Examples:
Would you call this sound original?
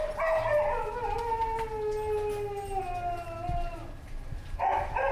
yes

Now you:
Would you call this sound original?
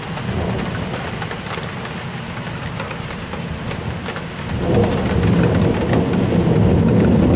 yes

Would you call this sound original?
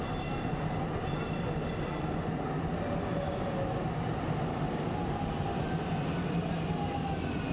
yes